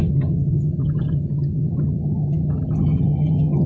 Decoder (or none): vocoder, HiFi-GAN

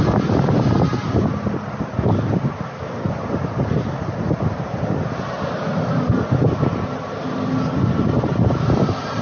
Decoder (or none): none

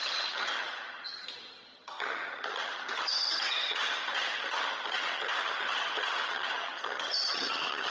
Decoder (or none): vocoder, HiFi-GAN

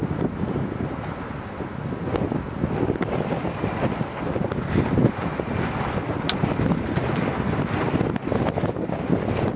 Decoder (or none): none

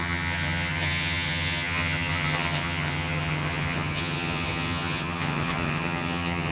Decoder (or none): vocoder, HiFi-GAN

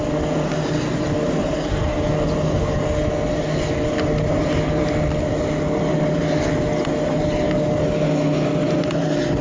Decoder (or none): none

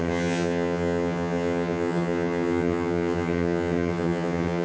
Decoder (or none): vocoder, HiFi-GAN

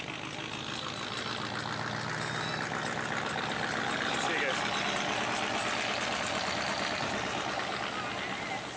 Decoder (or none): none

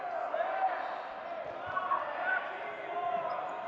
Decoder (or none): none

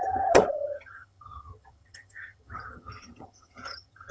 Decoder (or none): vocoder, HiFi-GAN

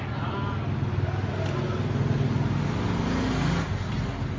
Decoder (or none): none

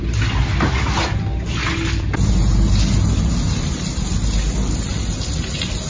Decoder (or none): none